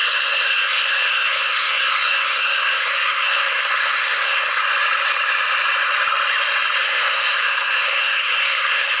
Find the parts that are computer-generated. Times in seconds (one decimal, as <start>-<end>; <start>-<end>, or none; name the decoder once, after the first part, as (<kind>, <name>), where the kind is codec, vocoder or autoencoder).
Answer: 0.0-4.6 (codec, SNAC); 6.8-9.0